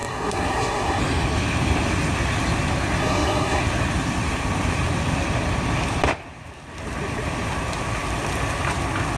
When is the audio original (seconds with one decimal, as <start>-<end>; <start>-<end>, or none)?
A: 1.0-3.0; 3.6-9.2